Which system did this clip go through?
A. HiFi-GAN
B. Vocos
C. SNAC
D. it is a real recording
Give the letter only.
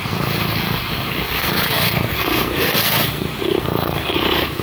C